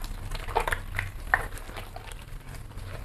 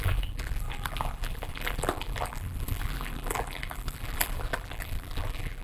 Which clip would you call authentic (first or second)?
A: first